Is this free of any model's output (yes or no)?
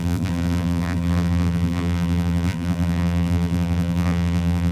no